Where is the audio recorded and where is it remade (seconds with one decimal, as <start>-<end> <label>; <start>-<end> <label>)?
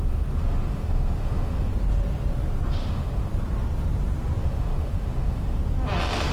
0.0-1.7 remade; 1.7-2.7 recorded; 2.7-3.3 remade; 3.3-4.4 recorded; 4.4-5.6 remade; 5.6-6.3 recorded